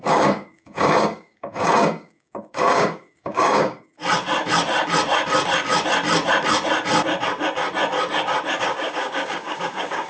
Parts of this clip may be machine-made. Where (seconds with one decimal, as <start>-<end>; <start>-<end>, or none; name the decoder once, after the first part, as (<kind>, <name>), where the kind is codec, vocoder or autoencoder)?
0.0-4.0 (codec, DAC); 8.6-10.1